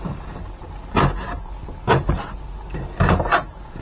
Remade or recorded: recorded